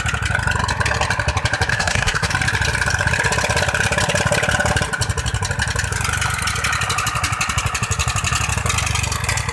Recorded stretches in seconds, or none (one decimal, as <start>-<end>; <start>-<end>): 0.0-1.7; 2.3-9.5